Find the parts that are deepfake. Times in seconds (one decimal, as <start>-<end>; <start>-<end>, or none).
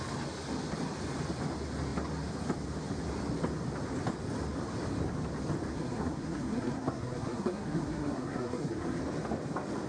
5.7-9.0